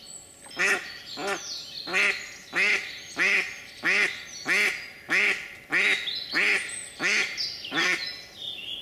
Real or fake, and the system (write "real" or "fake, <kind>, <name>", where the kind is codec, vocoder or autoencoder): real